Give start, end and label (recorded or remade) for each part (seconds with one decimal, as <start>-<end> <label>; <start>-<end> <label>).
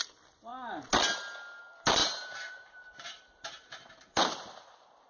0.0-2.0 recorded; 2.0-5.1 remade